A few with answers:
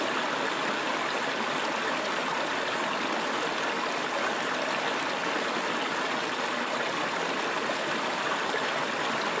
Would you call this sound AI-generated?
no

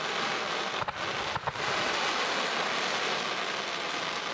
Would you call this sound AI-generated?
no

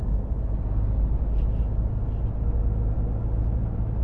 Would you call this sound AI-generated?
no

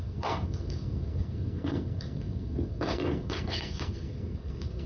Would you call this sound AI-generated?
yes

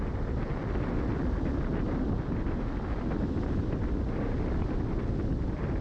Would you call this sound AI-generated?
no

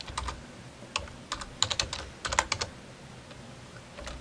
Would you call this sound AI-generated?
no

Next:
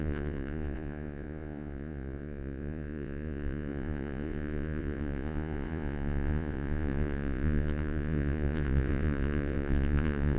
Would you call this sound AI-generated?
yes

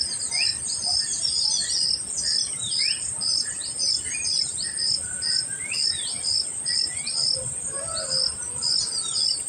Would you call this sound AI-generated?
no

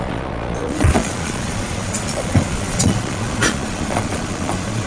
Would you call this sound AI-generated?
yes